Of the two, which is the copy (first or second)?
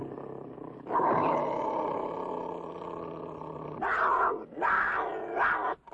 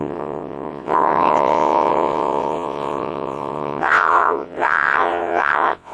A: second